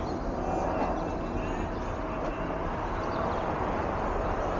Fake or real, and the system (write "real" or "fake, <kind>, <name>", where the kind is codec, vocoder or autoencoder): real